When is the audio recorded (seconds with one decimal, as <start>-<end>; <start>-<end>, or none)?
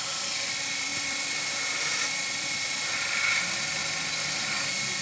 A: 3.8-5.0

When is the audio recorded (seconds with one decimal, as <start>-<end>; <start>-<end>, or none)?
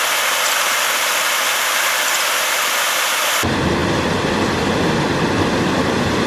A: none